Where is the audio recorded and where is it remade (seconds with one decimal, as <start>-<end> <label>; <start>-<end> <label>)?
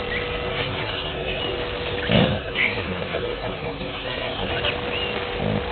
0.0-0.5 recorded; 0.5-1.4 remade; 1.4-2.2 recorded; 2.2-4.5 remade; 4.5-5.7 recorded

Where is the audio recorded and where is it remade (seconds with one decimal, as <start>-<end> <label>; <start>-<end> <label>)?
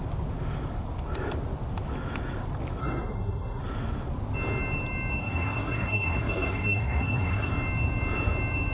0.0-2.8 recorded; 2.8-3.6 remade; 3.6-5.2 recorded; 5.2-7.5 remade; 7.5-8.7 recorded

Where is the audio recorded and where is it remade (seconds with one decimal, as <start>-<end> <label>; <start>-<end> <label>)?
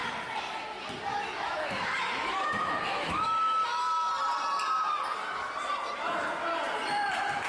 0.0-1.1 recorded; 1.1-4.1 remade; 4.1-7.5 recorded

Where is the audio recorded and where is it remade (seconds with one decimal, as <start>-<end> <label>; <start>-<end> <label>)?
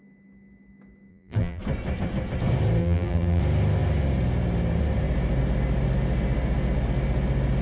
0.0-1.1 recorded; 1.1-1.6 remade; 1.6-2.8 recorded; 2.8-3.4 remade; 3.4-7.6 recorded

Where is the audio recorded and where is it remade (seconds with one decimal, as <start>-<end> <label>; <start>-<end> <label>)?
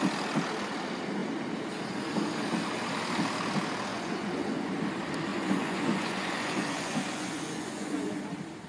0.0-3.9 recorded; 3.9-4.7 remade; 4.7-5.3 recorded; 5.3-8.2 remade; 8.2-8.7 recorded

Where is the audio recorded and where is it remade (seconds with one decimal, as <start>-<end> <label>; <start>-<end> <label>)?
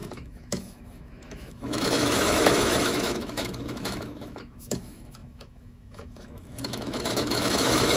0.0-8.0 remade